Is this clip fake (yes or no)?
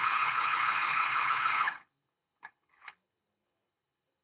yes